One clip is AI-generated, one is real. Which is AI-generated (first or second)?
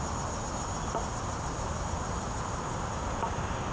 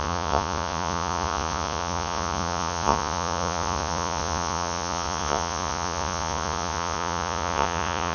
second